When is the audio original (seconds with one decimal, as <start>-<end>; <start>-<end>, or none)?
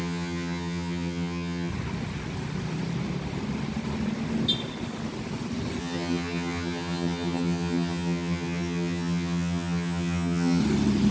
1.7-5.8; 10.6-11.1